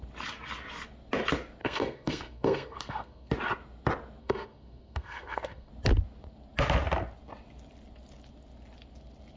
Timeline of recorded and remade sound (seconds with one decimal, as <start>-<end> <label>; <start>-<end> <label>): 0.0-1.6 recorded; 1.6-3.3 remade; 3.3-4.2 recorded; 4.2-5.7 remade; 5.7-9.4 recorded